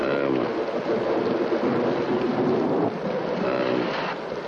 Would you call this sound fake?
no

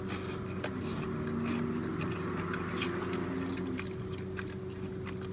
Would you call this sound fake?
no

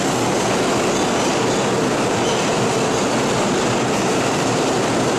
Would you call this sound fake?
no